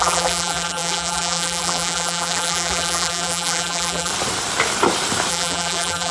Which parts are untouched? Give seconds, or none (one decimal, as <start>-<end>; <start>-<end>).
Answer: 4.1-5.3